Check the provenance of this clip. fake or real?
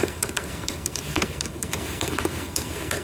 fake